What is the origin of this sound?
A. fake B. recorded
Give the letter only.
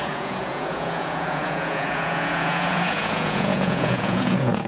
A